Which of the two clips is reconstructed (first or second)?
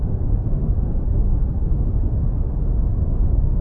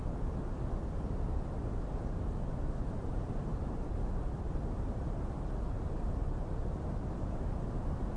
first